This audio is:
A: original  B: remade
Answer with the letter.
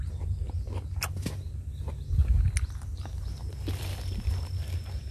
A